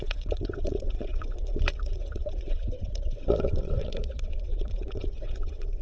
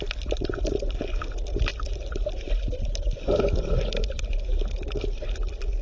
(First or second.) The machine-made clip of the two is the first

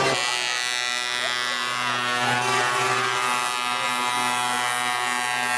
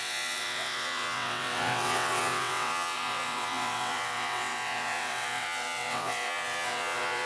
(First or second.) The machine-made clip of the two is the second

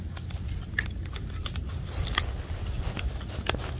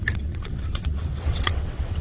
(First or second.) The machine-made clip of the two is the second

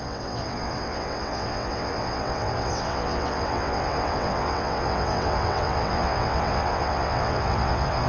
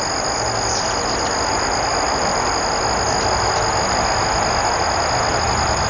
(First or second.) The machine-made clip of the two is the first